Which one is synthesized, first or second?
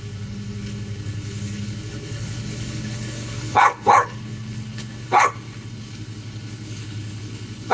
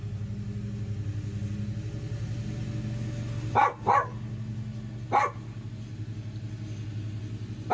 first